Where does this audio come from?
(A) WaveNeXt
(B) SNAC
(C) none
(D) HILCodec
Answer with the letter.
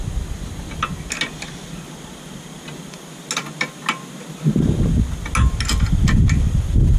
C